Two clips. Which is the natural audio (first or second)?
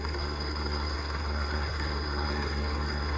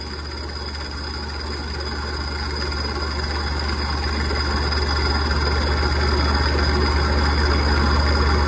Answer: second